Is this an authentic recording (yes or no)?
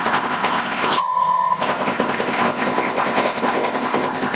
no